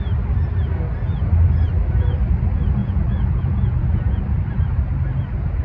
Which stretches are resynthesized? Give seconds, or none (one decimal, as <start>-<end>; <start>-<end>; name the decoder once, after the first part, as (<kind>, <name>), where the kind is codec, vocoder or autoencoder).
2.8-4.2 (vocoder, Vocos)